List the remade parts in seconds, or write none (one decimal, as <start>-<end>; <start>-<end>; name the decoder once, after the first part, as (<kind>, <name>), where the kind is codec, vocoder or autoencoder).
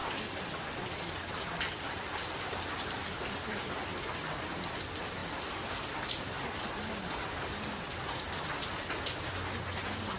5.2-8.5 (vocoder, BigVGAN v2)